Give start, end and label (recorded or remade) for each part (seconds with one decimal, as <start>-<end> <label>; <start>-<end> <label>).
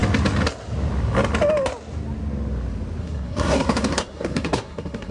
0.0-3.0 recorded; 3.0-5.1 remade